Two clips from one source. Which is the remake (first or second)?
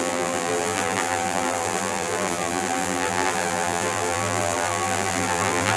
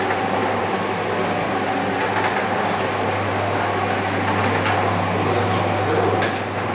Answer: first